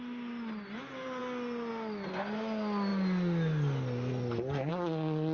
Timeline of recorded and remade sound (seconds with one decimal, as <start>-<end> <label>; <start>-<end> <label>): 0.0-5.3 recorded